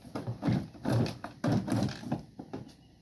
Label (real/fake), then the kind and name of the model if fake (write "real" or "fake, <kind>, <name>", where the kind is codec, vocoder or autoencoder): real